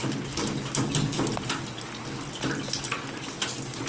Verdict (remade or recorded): recorded